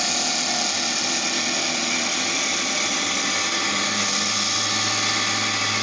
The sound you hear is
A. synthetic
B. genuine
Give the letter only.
B